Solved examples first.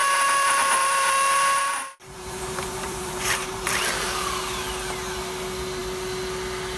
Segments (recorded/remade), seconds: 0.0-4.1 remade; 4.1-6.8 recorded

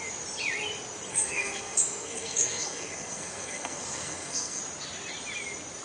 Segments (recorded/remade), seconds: 0.0-1.1 recorded; 1.1-4.6 remade; 4.6-5.8 recorded

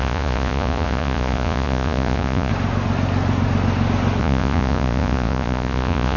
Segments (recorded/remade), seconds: 0.0-2.5 remade; 2.5-4.2 recorded; 4.2-6.2 remade

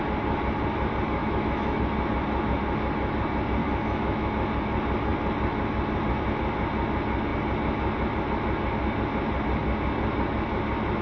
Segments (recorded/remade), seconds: 0.0-1.2 recorded; 1.2-1.8 remade; 1.8-3.6 recorded; 3.6-4.3 remade; 4.3-11.0 recorded

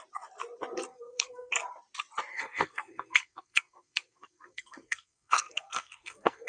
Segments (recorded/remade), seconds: 0.0-0.9 recorded; 0.9-1.5 remade; 1.5-2.3 recorded; 2.3-6.5 remade

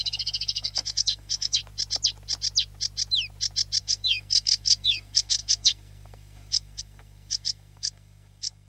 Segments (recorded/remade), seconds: 0.0-1.6 remade; 1.6-3.8 recorded; 3.8-8.7 remade

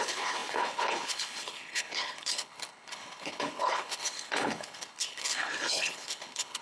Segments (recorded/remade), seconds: 0.0-6.6 remade

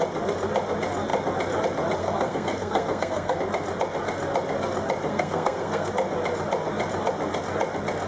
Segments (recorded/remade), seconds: 0.0-2.0 recorded; 2.0-3.4 remade; 3.4-5.1 recorded; 5.1-5.9 remade; 5.9-8.1 recorded